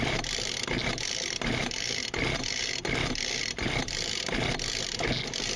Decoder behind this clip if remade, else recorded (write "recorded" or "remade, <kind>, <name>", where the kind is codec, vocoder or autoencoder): remade, vocoder, BigVGAN v2